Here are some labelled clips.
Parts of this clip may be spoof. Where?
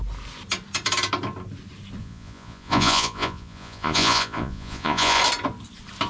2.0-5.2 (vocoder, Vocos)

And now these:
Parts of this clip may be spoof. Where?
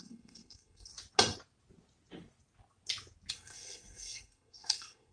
0.0-0.9 (codec, SNAC); 3.3-5.1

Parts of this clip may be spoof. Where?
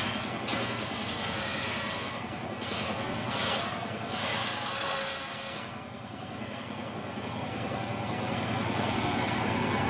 0.0-9.9 (codec, SNAC)